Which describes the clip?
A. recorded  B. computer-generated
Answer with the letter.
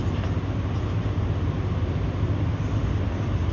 A